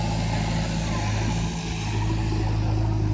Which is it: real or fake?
real